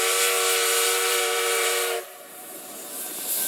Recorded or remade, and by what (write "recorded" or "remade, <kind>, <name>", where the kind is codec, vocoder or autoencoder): remade, vocoder, BigVGAN v2